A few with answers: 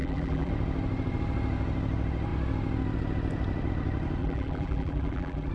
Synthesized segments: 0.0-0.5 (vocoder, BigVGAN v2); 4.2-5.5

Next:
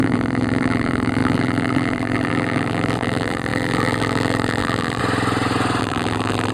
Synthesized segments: 0.0-5.0 (vocoder, BigVGAN v2); 5.8-6.5

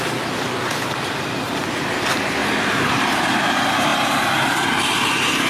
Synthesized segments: 2.4-3.2 (vocoder, BigVGAN v2)

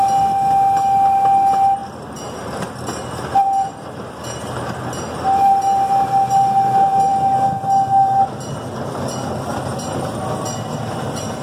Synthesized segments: 3.7-4.4 (vocoder, BigVGAN v2)

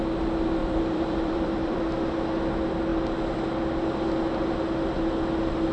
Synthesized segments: 0.6-1.8 (vocoder, BigVGAN v2)